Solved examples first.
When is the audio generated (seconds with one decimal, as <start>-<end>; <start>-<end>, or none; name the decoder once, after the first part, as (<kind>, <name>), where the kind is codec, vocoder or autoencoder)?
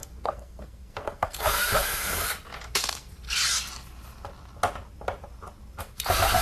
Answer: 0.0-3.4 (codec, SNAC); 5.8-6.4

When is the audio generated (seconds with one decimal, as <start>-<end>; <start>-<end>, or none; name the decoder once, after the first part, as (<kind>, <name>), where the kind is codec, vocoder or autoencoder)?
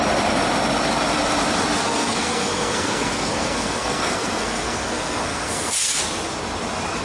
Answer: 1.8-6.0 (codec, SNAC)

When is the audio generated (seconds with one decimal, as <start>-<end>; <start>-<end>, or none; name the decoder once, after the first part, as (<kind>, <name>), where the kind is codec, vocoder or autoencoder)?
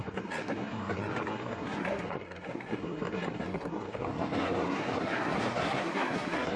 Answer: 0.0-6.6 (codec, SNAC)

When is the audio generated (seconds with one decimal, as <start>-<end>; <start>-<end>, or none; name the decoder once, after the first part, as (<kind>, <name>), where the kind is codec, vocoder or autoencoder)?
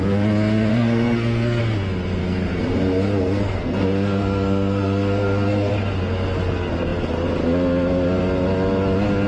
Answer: 0.7-1.6 (codec, SNAC); 2.2-5.7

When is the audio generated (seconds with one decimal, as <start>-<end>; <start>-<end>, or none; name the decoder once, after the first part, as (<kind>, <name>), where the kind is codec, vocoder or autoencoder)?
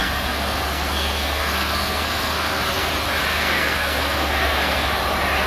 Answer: 0.0-2.9 (codec, SNAC); 3.3-5.0